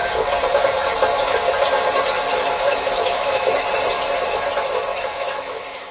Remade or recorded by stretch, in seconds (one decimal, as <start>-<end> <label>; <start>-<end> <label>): 0.0-2.3 recorded; 2.3-3.7 remade; 3.7-4.9 recorded; 4.9-5.9 remade